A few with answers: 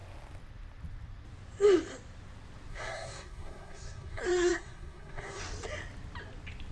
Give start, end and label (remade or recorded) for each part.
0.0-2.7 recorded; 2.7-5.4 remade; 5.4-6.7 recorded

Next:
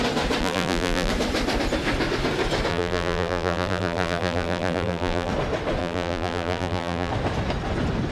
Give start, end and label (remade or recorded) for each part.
0.0-0.4 recorded; 0.4-1.1 remade; 1.1-2.7 recorded; 2.7-5.3 remade; 5.3-5.8 recorded; 5.8-7.1 remade; 7.1-8.1 recorded

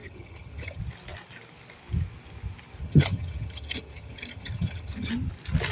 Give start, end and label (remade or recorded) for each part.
0.0-0.8 remade; 0.8-2.8 recorded; 2.8-5.1 remade; 5.1-5.7 recorded

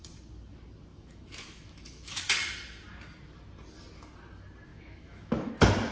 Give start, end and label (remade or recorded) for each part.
0.0-0.9 recorded; 0.9-2.2 remade; 2.2-4.7 recorded; 4.7-5.5 remade; 5.5-5.9 recorded